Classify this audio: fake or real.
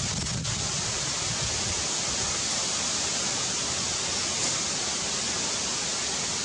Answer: real